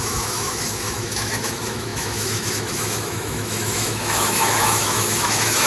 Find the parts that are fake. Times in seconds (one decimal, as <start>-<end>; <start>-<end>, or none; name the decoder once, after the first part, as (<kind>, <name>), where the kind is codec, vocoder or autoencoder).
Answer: 0.0-5.7 (autoencoder, DAC-VAE)